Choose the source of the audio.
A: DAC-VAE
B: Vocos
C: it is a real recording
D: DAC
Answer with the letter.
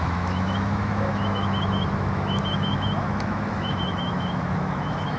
A